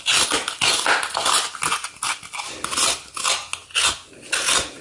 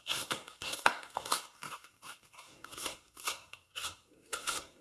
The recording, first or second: first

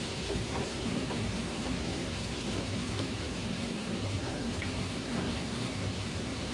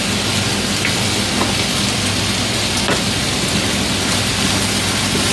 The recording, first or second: second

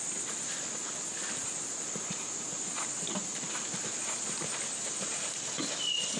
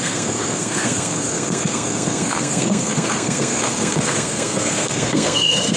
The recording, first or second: first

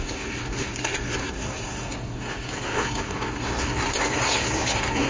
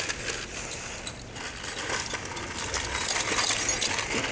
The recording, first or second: second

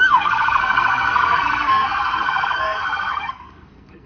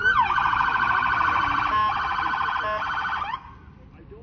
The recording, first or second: second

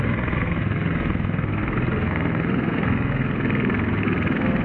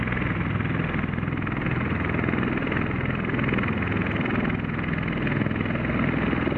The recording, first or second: second